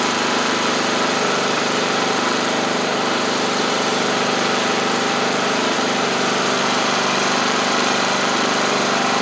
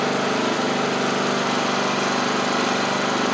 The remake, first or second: first